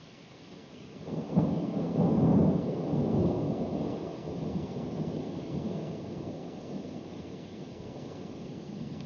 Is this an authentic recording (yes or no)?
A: no